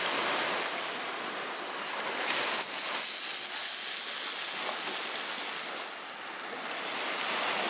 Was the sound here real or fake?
real